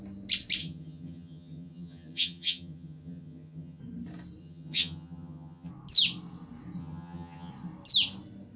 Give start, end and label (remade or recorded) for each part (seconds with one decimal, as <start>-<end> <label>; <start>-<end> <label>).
0.0-0.6 recorded; 0.6-3.8 remade; 3.8-4.4 recorded; 4.4-5.7 remade; 5.7-6.8 recorded; 6.8-7.5 remade; 7.5-8.6 recorded